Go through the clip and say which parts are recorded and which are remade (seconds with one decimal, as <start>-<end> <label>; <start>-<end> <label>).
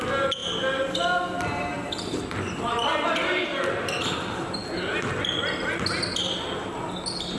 0.0-7.4 recorded